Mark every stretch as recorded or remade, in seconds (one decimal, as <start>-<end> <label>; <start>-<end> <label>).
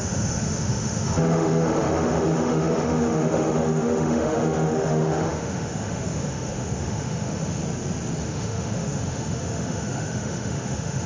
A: 0.0-7.6 remade; 7.6-8.2 recorded; 8.2-11.1 remade